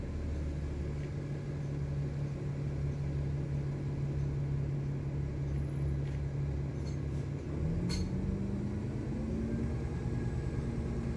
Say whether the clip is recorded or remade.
recorded